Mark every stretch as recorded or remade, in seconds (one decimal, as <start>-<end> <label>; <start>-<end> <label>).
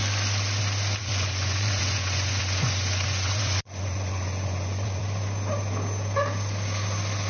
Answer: 0.0-1.0 recorded; 1.0-5.0 remade; 5.0-7.3 recorded